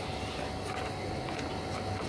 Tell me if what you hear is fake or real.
real